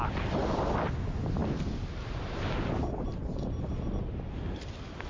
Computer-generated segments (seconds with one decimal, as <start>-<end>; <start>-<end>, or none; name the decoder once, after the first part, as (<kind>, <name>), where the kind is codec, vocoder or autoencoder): none